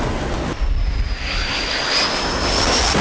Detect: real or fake real